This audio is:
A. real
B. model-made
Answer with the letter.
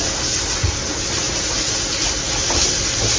A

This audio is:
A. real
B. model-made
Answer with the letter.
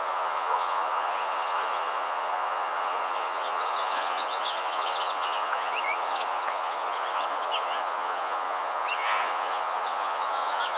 B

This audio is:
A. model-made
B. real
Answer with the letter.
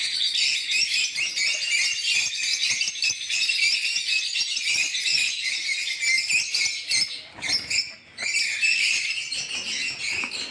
B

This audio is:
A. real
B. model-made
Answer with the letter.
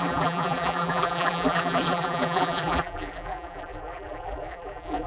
B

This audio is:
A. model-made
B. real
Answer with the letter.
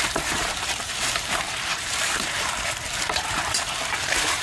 A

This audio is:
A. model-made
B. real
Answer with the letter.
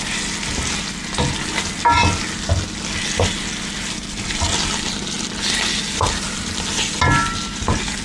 B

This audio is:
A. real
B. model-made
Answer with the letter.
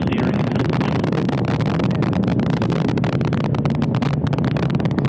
A